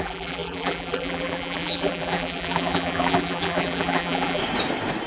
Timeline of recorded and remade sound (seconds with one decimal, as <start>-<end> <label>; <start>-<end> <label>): 0.0-4.4 remade; 4.4-5.1 recorded